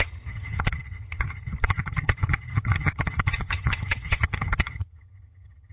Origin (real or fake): fake